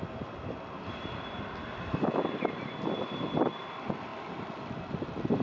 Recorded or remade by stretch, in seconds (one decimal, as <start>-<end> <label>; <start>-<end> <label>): 0.0-5.4 recorded